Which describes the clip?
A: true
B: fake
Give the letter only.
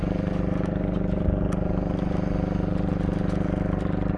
B